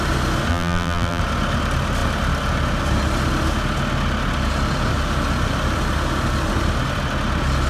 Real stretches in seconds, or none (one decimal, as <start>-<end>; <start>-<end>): 0.0-0.5; 1.2-7.7

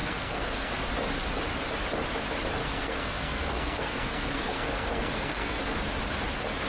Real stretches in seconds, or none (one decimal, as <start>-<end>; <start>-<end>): 0.7-2.6; 5.6-6.7

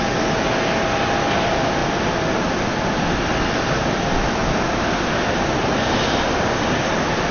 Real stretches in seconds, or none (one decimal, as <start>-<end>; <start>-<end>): 0.0-7.3

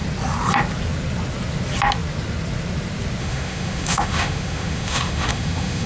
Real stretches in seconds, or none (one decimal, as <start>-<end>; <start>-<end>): 0.0-3.2

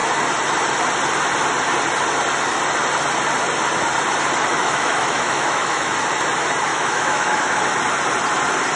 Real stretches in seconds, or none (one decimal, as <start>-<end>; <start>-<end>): 0.0-4.6; 5.9-6.7; 7.6-8.8

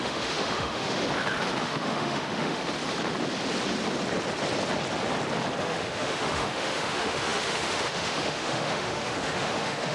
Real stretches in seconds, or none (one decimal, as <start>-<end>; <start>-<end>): 1.0-1.6; 2.6-5.6

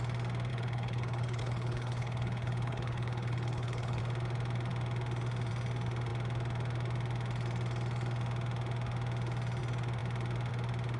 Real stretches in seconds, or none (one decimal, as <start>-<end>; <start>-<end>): 0.0-0.5; 4.0-11.0

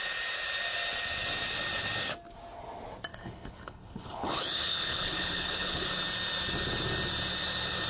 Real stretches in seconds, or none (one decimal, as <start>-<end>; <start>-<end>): 0.0-3.1; 5.9-7.9